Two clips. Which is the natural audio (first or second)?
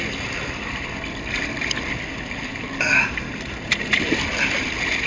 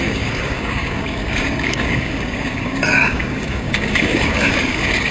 first